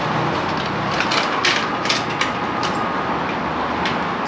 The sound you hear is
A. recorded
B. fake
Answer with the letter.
A